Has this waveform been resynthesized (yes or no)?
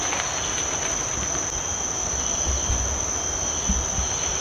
no